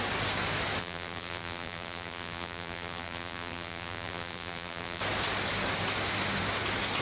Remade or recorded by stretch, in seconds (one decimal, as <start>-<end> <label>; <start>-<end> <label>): 0.0-0.8 recorded; 0.8-5.0 remade; 5.0-7.0 recorded